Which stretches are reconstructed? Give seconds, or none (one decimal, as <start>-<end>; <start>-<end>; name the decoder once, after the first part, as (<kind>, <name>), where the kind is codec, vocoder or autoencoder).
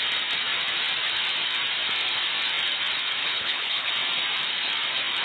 3.2-3.9 (codec, HILCodec)